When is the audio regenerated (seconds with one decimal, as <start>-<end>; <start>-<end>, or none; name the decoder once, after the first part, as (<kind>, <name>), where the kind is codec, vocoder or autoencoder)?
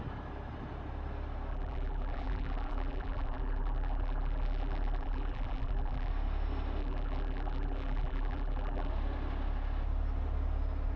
1.5-6.1 (vocoder, BigVGAN v2); 6.8-8.9